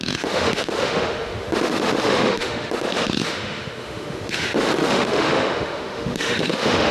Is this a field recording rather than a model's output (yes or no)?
no